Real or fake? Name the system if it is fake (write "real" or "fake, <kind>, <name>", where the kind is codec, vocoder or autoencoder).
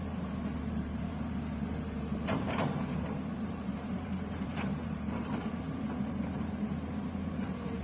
fake, vocoder, BigVGAN v2